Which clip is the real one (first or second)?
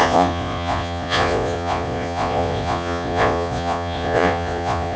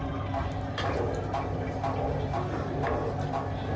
second